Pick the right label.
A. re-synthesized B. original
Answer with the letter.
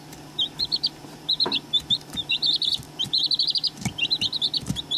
A